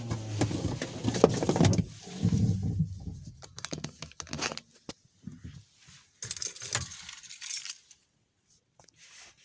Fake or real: real